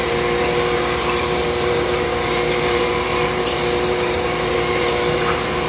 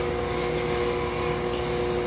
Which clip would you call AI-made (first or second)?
first